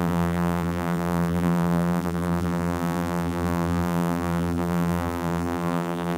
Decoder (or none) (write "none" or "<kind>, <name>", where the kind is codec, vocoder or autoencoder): vocoder, BigVGAN v2